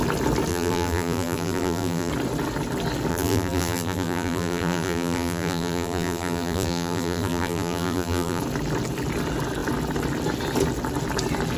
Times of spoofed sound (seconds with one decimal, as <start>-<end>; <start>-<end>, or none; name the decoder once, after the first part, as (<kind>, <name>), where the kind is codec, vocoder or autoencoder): 0.5-2.1 (vocoder, BigVGAN v2); 3.1-8.4